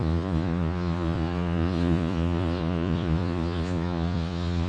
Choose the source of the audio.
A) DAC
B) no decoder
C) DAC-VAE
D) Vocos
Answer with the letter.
D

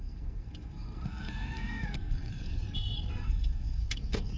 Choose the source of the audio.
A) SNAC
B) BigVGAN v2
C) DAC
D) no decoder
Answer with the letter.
A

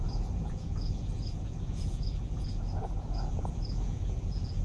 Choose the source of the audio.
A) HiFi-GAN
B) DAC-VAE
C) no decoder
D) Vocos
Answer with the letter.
D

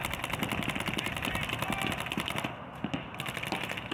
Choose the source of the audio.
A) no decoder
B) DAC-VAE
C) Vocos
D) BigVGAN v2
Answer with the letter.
A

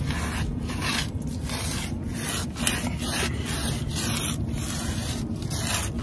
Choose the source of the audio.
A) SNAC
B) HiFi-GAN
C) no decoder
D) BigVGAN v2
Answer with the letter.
C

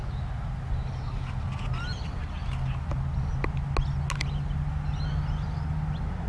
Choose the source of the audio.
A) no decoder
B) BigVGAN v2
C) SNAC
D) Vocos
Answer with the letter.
A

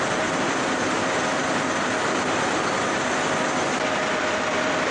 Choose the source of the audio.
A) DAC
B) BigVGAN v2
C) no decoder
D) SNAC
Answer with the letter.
C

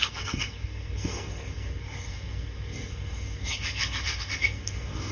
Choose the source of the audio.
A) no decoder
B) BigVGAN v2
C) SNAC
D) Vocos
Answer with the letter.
C